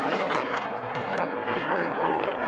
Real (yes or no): no